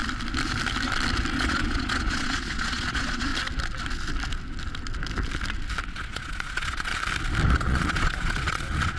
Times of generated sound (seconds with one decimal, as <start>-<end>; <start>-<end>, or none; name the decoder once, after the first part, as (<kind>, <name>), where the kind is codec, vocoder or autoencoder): 1.3-3.3 (vocoder, Vocos); 5.9-6.9; 7.5-9.0